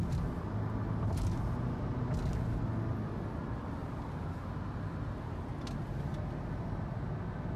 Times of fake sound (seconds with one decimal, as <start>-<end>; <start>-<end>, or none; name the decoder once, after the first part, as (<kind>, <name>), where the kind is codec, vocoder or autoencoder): none